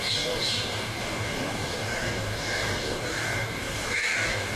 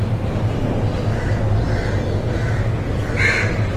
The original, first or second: second